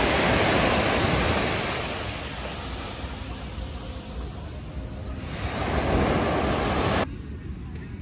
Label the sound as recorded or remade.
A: recorded